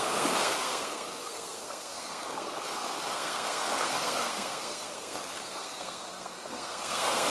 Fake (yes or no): yes